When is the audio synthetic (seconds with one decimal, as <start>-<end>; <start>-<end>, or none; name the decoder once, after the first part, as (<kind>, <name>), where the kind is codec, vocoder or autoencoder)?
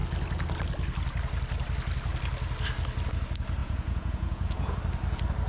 3.6-4.8 (vocoder, Vocos)